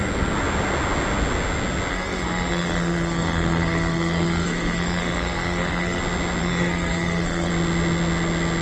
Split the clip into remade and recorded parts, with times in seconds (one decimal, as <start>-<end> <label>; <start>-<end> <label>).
0.0-1.9 recorded; 1.9-6.0 remade; 6.0-6.4 recorded; 6.4-7.5 remade; 7.5-8.6 recorded